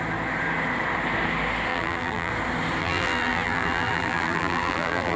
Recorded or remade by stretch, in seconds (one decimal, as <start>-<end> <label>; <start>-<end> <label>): 0.0-1.7 recorded; 1.7-2.3 remade; 2.3-2.8 recorded; 2.8-5.2 remade